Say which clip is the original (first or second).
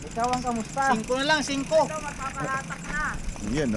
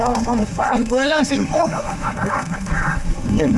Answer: first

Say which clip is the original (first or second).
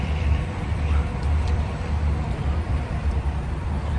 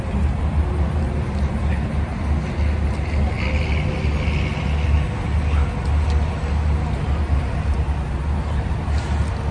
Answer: second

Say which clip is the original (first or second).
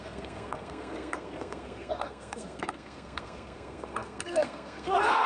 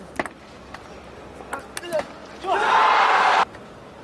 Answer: second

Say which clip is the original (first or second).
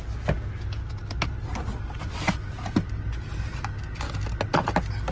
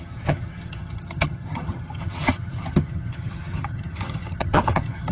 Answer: first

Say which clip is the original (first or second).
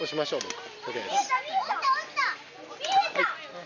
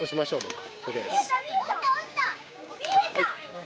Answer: first